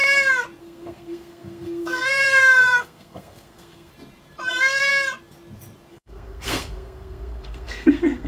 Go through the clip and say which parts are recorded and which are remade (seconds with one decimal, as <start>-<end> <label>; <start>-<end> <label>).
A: 0.0-0.6 recorded; 0.6-3.9 remade; 3.9-4.5 recorded; 4.5-4.9 remade; 4.9-5.9 recorded; 5.9-8.3 remade